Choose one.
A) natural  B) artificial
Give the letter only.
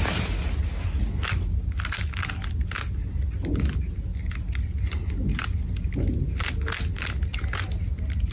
A